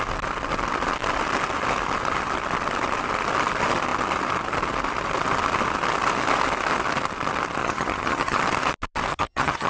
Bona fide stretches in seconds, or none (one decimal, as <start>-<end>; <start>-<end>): 0.0-7.6; 8.4-9.1